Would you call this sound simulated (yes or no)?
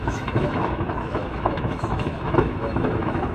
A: yes